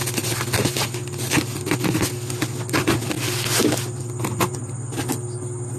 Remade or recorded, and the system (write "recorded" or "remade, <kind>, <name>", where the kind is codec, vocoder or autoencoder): recorded